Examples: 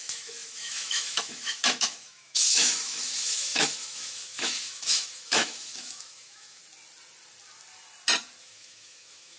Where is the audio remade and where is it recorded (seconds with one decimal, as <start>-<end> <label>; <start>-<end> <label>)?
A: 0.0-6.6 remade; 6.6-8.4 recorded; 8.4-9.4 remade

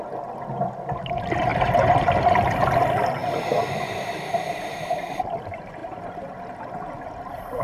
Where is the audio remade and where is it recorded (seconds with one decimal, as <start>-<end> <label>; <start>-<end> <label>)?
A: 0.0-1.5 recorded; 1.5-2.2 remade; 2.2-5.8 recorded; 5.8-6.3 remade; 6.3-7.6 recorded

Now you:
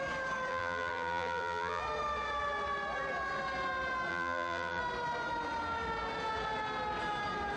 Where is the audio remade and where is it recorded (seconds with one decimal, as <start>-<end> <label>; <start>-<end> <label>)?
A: 0.0-0.5 recorded; 0.5-1.8 remade; 1.8-4.1 recorded; 4.1-4.8 remade; 4.8-7.6 recorded

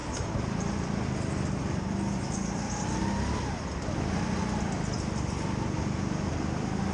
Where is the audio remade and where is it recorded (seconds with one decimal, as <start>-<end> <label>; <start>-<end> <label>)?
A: 0.0-6.9 recorded

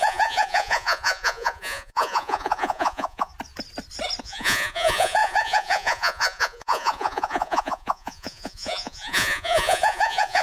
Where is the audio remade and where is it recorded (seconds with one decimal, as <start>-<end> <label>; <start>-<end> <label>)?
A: 0.0-3.3 remade; 3.3-4.2 recorded; 4.2-10.4 remade

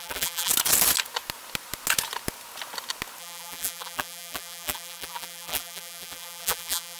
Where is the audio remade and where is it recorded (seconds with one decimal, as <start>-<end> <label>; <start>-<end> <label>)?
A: 0.0-0.5 remade; 0.5-3.2 recorded; 3.2-7.0 remade

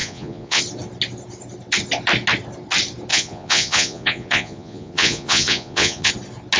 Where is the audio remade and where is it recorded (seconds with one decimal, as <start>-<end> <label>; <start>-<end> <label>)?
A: 0.0-0.6 remade; 0.6-3.1 recorded; 3.1-6.1 remade; 6.1-6.6 recorded